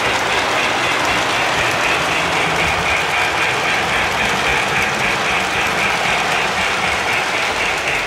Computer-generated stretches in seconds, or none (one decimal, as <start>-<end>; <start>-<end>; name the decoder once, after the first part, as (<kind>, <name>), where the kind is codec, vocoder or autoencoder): none